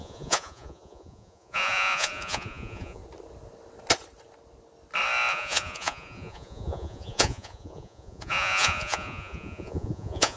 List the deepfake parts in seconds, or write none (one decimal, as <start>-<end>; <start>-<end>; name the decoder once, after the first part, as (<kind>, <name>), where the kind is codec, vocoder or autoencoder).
0.0-3.0 (vocoder, Vocos); 5.3-10.4